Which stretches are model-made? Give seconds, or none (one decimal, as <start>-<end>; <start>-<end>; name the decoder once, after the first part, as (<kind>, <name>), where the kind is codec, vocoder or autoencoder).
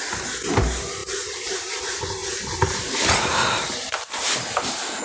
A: 1.0-1.8 (vocoder, BigVGAN v2); 2.2-5.0